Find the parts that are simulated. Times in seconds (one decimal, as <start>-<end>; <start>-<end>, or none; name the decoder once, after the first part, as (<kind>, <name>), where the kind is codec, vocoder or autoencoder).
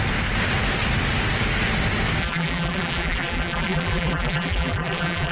2.2-5.3 (vocoder, BigVGAN v2)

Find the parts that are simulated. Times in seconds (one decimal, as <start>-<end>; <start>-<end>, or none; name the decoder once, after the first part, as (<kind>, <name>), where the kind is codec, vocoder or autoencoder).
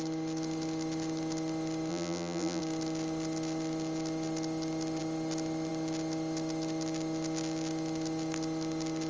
1.9-2.6 (vocoder, BigVGAN v2)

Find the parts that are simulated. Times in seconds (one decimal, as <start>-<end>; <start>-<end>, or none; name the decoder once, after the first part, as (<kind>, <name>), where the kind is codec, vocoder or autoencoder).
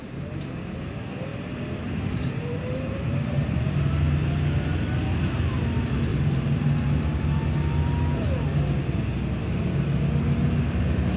1.3-3.9 (vocoder, BigVGAN v2); 6.1-7.3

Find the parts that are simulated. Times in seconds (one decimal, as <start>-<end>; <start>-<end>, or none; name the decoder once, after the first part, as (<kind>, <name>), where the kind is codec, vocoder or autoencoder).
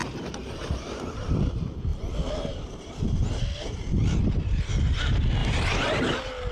0.0-1.3 (vocoder, BigVGAN v2); 5.4-6.0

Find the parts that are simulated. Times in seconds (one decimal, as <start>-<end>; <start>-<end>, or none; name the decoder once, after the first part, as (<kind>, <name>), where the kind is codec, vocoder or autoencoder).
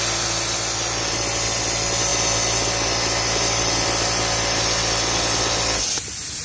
none